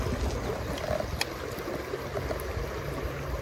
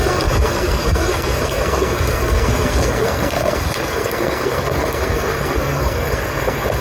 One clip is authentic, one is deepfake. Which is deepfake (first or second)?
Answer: second